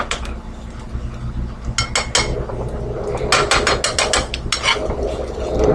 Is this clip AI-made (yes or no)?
no